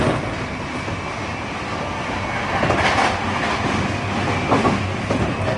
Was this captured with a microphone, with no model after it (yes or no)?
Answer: yes